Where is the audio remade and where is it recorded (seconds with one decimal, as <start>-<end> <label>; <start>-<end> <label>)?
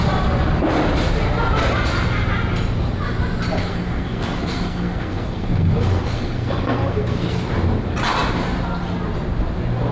0.0-3.6 recorded; 3.6-7.5 remade; 7.5-9.9 recorded